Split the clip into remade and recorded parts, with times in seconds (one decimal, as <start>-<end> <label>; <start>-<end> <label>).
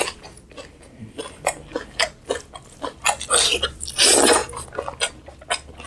0.0-5.9 recorded